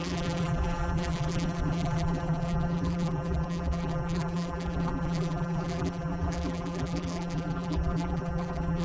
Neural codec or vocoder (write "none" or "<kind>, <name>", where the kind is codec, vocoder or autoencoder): vocoder, BigVGAN v2